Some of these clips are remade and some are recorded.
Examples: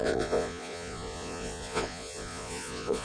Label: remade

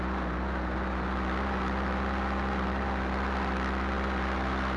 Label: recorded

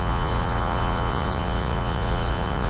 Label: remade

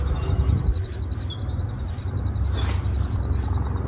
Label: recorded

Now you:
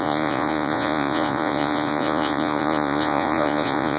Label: remade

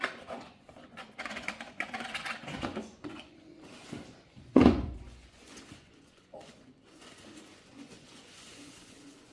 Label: remade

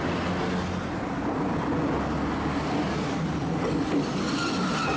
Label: recorded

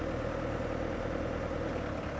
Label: recorded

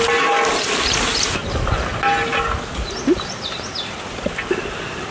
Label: recorded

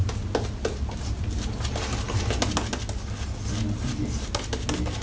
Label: recorded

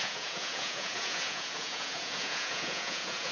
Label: remade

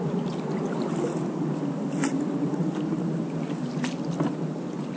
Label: recorded